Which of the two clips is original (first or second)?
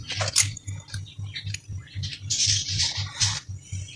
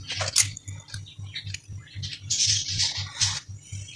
second